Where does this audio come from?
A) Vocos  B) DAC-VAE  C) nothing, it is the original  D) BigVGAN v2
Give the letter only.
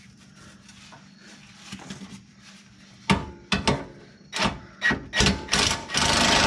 C